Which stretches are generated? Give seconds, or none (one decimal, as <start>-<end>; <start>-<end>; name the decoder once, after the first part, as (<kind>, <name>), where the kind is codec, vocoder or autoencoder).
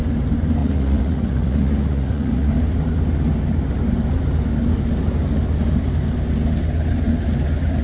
0.6-2.5 (vocoder, Vocos)